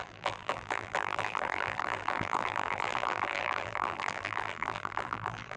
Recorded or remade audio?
remade